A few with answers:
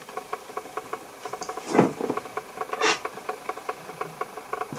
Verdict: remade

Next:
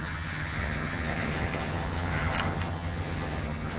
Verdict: remade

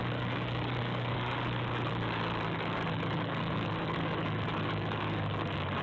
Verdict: remade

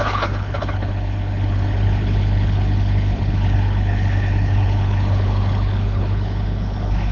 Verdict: remade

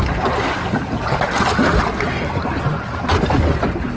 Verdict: recorded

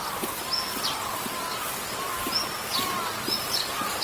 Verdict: recorded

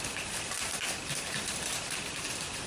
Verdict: recorded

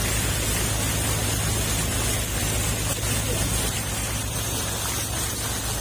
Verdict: recorded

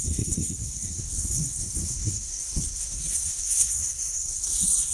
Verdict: remade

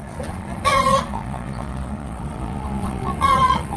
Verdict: remade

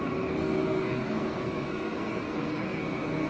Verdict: remade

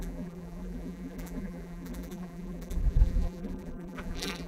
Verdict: remade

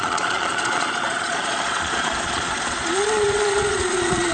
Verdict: remade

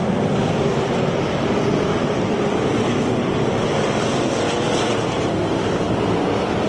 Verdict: remade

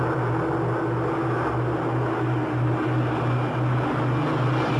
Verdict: recorded